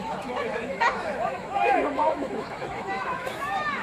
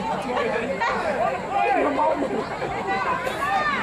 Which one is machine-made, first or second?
first